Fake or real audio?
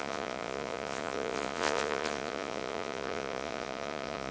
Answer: fake